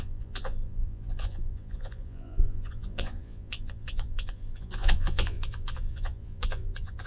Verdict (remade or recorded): remade